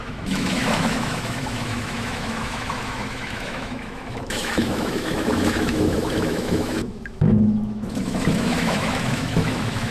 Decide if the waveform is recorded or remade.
remade